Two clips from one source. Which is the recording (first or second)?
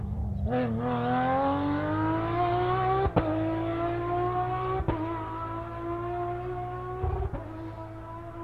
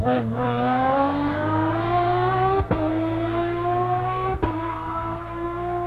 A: first